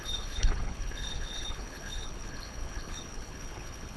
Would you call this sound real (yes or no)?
no